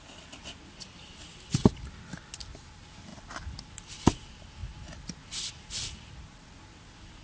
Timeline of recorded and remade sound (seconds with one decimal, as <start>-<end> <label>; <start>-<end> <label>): 0.0-7.2 recorded